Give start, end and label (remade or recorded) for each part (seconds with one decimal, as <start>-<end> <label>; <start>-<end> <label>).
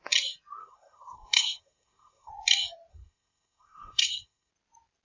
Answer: 0.0-0.6 recorded; 0.6-2.3 remade; 2.3-2.9 recorded; 2.9-4.5 remade; 4.5-5.0 recorded